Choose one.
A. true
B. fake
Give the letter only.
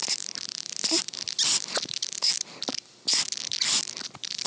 A